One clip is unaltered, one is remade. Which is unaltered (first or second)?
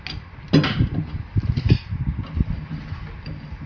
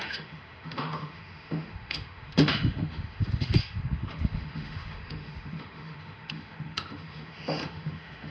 first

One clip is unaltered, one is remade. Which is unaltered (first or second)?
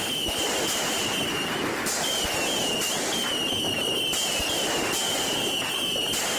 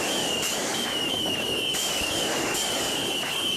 first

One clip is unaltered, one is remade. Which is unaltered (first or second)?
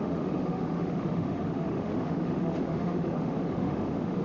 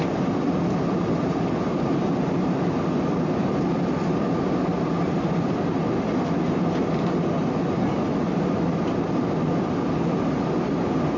second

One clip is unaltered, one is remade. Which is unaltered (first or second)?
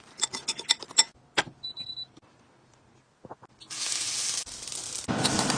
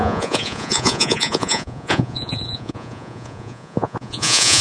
first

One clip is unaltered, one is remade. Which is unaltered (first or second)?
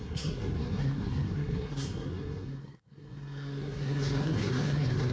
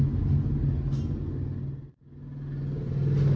second